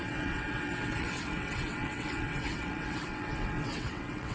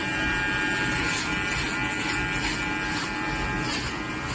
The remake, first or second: first